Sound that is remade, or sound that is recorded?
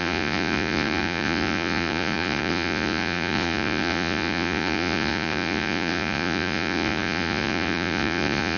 remade